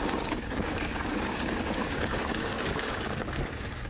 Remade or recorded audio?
remade